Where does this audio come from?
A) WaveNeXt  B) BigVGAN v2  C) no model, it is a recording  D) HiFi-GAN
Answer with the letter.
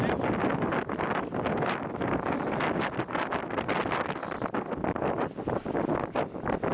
C